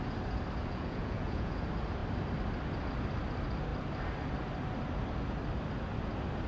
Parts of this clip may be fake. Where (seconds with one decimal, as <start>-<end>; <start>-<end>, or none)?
0.6-1.6